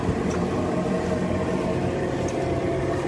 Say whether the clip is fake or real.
fake